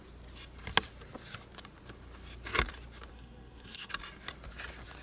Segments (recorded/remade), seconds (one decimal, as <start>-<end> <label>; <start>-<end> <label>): 0.0-3.1 recorded; 3.1-3.9 remade; 3.9-5.0 recorded